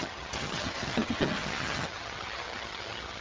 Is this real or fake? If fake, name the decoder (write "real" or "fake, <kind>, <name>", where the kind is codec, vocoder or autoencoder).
fake, vocoder, HiFi-GAN